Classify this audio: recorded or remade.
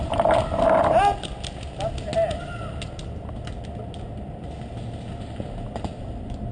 recorded